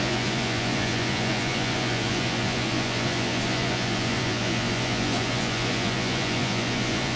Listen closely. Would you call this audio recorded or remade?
remade